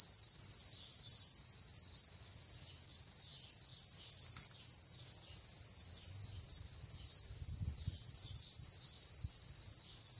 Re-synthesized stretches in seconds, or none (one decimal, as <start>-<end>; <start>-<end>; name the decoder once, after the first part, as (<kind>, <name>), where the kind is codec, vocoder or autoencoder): none